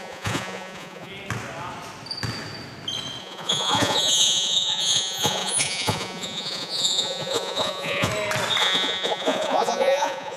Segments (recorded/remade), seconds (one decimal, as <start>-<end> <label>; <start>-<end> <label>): 0.0-1.1 remade; 1.1-3.2 recorded; 3.2-8.1 remade; 8.1-8.6 recorded; 8.6-10.4 remade